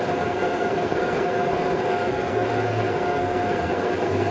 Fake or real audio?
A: fake